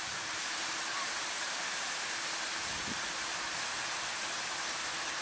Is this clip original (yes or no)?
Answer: yes